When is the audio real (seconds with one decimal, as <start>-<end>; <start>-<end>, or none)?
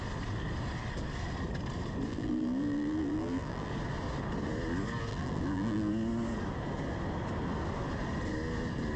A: 0.0-2.1; 3.7-5.1; 5.9-9.0